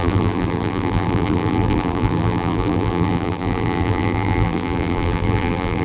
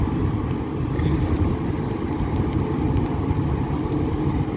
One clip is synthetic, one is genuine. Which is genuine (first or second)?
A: second